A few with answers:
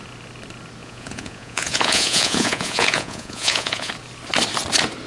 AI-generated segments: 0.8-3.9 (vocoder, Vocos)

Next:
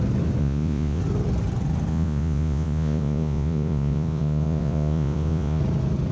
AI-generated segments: 0.4-1.0 (vocoder, Vocos); 1.9-5.6